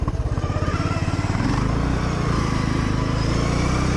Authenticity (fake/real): fake